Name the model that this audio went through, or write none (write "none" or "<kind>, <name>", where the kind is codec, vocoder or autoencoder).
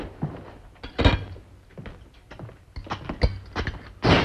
none